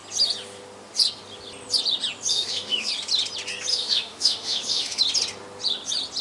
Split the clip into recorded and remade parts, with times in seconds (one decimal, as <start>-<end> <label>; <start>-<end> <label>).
0.0-2.3 recorded; 2.3-2.9 remade; 2.9-3.7 recorded; 3.7-5.0 remade; 5.0-6.2 recorded